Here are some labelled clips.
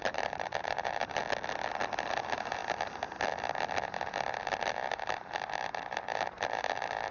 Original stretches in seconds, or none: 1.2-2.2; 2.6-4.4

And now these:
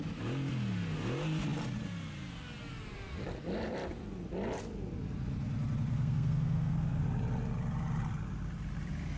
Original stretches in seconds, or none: 0.0-5.9; 7.0-9.2

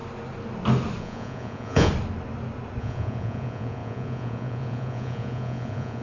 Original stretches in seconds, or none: 0.0-1.0; 1.9-2.8

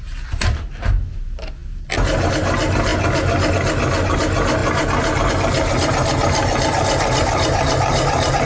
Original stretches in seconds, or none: 0.0-8.5